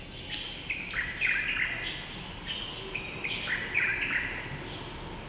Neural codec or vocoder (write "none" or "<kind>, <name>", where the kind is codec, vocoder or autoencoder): none